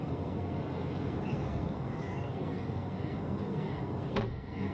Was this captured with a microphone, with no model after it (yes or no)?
no